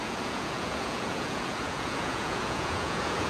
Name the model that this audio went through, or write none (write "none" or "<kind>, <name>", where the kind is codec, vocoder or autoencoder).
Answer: vocoder, Vocos